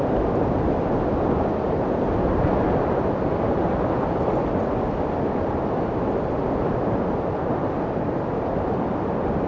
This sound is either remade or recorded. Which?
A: recorded